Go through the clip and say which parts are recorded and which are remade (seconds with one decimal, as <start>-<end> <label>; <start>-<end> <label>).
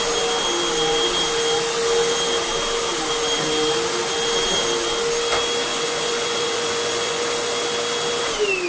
0.0-5.7 recorded; 5.7-7.2 remade; 7.2-8.7 recorded